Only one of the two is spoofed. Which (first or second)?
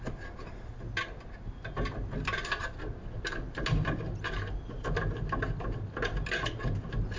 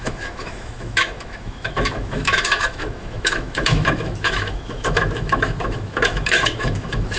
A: second